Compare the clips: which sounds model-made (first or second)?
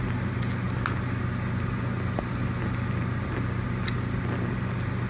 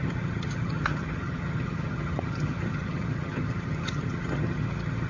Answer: second